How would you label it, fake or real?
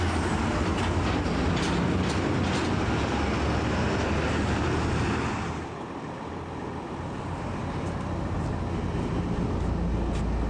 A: real